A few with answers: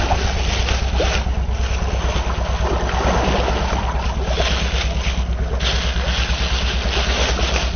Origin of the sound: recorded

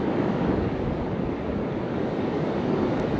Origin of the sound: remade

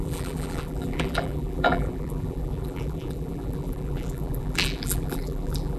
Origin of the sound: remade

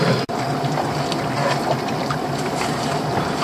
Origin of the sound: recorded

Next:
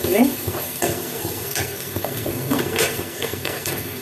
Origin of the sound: remade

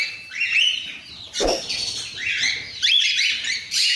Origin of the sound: recorded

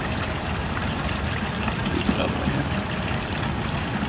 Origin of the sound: recorded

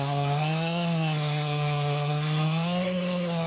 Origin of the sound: remade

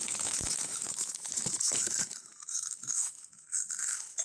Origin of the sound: remade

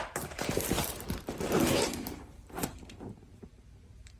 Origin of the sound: remade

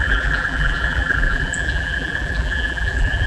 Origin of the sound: remade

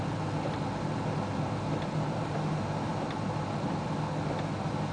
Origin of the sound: recorded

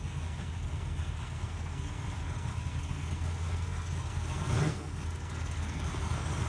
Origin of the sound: remade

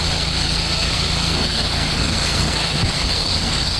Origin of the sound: remade